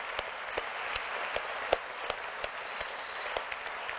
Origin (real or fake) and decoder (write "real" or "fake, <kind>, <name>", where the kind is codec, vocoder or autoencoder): real